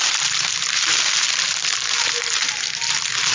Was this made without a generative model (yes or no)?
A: no